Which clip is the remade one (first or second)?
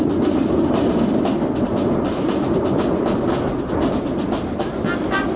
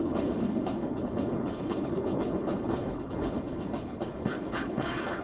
second